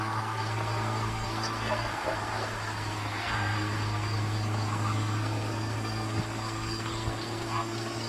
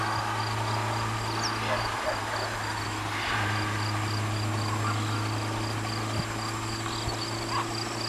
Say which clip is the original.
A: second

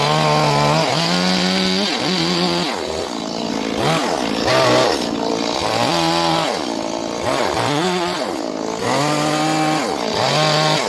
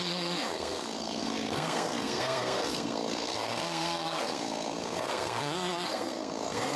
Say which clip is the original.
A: first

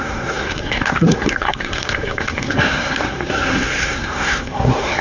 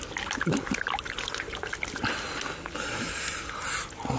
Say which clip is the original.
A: second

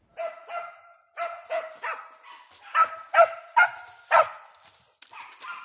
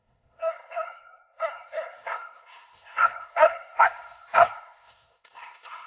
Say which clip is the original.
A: first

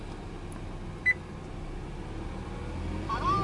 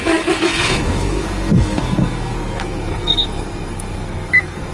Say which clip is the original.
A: first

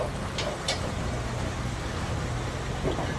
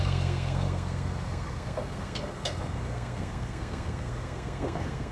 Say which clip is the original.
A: first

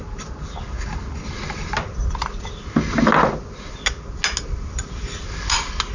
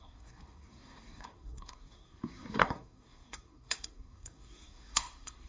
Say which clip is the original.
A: first